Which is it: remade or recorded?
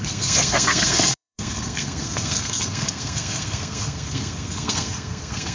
remade